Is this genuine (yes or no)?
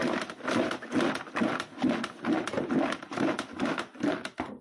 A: no